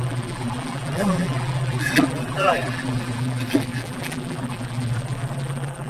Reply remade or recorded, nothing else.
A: remade